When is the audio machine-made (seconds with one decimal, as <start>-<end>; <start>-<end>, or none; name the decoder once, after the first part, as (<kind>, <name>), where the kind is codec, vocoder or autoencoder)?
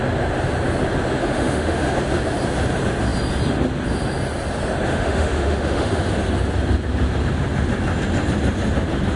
1.2-1.9 (autoencoder, DAC-VAE); 4.9-6.1